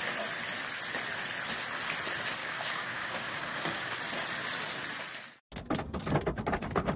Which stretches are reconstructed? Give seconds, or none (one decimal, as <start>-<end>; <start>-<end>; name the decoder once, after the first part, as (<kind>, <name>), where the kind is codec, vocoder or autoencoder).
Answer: 2.4-4.0 (codec, DAC)